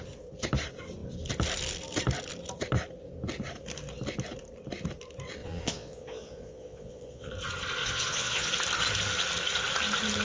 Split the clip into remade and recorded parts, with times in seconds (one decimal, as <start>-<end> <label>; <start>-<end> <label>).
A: 0.0-5.4 recorded; 5.4-7.3 remade; 7.3-7.8 recorded; 7.8-8.5 remade; 8.5-10.2 recorded